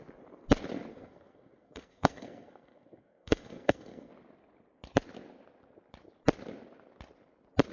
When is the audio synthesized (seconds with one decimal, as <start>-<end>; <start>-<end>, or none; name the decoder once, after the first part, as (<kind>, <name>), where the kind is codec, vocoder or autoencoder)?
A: 0.9-4.1 (codec, SNAC)